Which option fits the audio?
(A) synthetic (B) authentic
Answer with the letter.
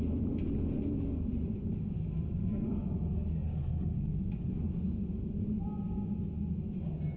B